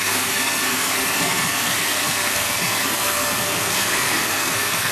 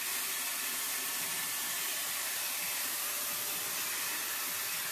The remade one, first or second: first